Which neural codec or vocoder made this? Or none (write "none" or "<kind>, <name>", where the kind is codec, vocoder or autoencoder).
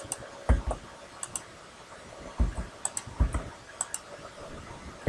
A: none